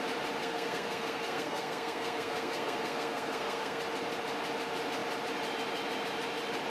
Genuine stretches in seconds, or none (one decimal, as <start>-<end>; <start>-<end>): 0.0-0.4; 3.8-6.7